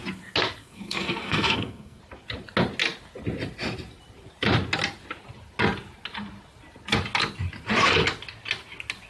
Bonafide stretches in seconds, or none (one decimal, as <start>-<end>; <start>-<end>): 0.0-0.6; 2.0-9.1